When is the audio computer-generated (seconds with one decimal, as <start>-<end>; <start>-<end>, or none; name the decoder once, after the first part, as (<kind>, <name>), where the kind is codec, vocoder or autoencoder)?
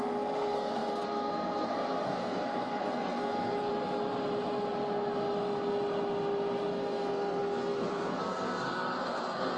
0.0-3.7 (codec, SNAC); 6.7-9.6